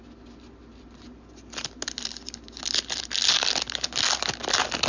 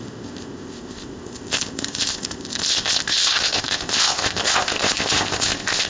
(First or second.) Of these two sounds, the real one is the first